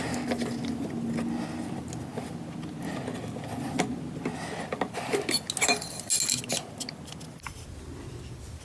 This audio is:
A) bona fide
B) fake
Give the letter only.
A